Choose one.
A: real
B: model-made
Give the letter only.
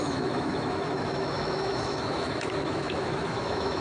B